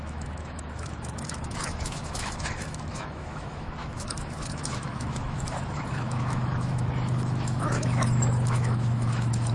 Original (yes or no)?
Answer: no